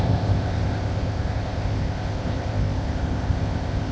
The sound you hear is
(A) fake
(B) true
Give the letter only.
A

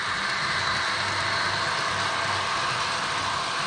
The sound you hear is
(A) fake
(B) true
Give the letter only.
B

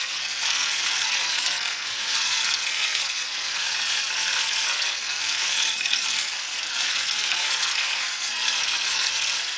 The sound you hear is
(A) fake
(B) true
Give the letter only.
A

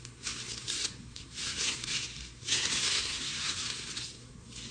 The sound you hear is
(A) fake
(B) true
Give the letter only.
A